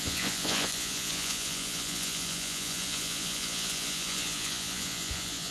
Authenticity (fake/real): fake